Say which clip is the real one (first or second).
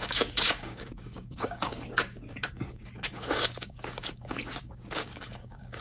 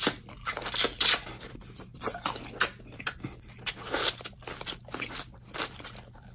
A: second